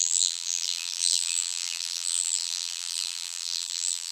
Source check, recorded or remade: remade